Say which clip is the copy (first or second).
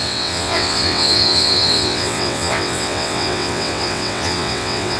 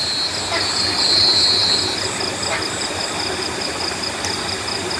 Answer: first